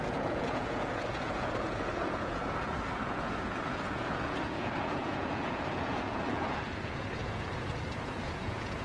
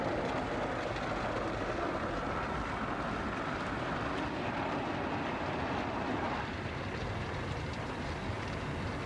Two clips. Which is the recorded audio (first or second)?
second